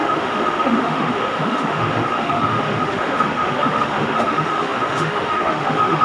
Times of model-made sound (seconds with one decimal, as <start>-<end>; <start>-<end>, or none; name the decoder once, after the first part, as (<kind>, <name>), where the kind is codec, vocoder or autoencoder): 0.0-6.0 (autoencoder, DAC-VAE)